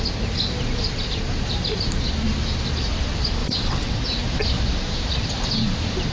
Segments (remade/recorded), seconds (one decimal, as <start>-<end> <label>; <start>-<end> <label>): 0.0-3.4 recorded; 3.4-4.0 remade; 4.0-6.1 recorded